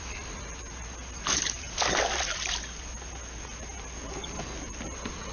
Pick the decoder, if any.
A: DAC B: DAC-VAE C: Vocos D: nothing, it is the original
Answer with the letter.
D